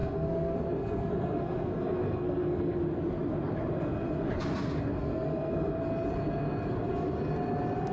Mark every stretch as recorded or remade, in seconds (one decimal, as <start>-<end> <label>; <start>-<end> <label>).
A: 0.0-2.8 remade; 2.8-5.0 recorded; 5.0-5.8 remade; 5.8-7.9 recorded